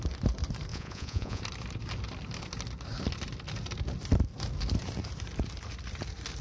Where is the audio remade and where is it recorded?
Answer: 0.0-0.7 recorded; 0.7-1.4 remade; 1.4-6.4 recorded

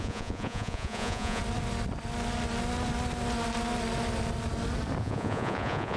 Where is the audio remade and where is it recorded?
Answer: 0.0-1.4 remade; 1.4-5.0 recorded; 5.0-6.0 remade

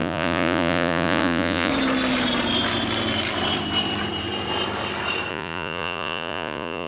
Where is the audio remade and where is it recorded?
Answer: 0.0-1.7 remade; 1.7-5.3 recorded; 5.3-6.9 remade

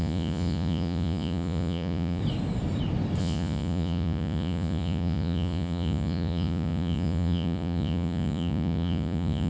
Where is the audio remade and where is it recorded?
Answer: 0.0-2.2 remade; 2.2-3.2 recorded; 3.2-9.5 remade

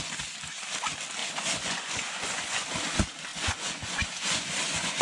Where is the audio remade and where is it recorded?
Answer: 0.0-1.2 recorded; 1.2-2.7 remade; 2.7-3.3 recorded; 3.3-5.0 remade

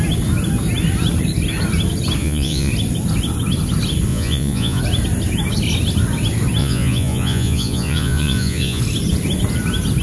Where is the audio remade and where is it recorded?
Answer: 0.0-2.2 recorded; 2.2-2.7 remade; 2.7-4.1 recorded; 4.1-4.8 remade; 4.8-6.6 recorded; 6.6-8.8 remade; 8.8-10.0 recorded

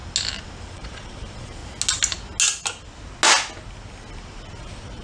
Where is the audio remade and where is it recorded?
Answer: 0.0-0.7 recorded; 0.7-1.6 remade; 1.6-4.6 recorded; 4.6-5.0 remade

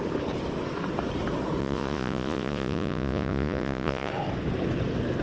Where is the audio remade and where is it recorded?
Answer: 0.0-1.6 recorded; 1.6-4.1 remade; 4.1-5.2 recorded